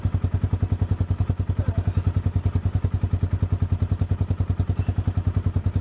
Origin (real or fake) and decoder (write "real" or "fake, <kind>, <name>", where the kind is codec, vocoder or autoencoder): real